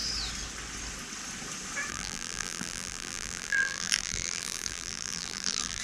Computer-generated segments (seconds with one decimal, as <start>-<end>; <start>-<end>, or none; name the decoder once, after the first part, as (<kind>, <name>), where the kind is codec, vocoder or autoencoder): 1.9-5.8 (vocoder, BigVGAN v2)